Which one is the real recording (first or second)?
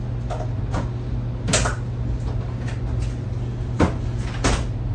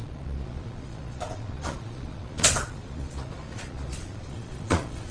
first